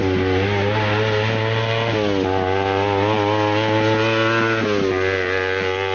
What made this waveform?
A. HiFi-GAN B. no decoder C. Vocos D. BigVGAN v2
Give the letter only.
B